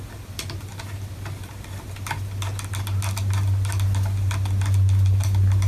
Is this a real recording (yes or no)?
yes